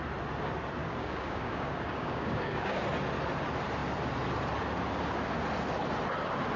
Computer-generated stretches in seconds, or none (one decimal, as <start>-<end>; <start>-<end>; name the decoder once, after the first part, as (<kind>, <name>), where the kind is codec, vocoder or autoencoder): 0.8-2.8 (codec, DAC)